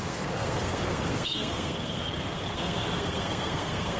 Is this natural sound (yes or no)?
no